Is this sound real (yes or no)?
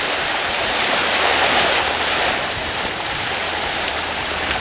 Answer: no